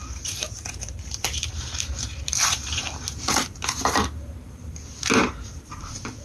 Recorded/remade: remade